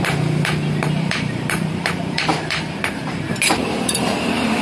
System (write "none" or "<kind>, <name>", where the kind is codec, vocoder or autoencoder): vocoder, BigVGAN v2